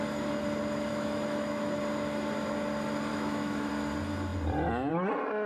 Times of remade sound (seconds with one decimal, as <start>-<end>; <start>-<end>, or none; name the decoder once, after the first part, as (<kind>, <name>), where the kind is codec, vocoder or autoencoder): 0.9-1.8 (autoencoder, DAC-VAE); 3.1-3.7